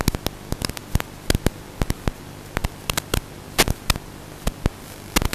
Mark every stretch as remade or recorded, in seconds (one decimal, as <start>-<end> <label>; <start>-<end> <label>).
0.0-5.3 recorded